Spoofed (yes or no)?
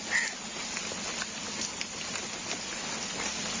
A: no